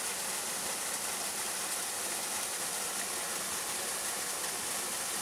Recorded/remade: recorded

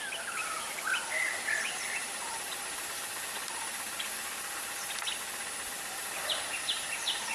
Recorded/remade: recorded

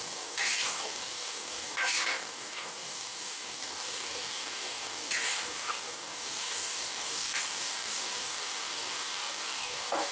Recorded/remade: remade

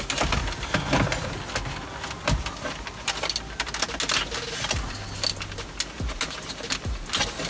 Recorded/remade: recorded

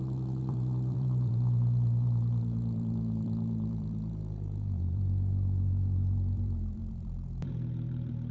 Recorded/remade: remade